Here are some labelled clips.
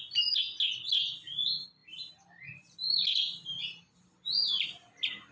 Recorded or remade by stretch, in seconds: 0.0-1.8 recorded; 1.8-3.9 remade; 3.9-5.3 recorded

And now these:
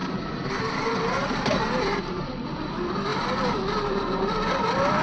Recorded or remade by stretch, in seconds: 0.0-2.0 remade; 2.0-5.0 recorded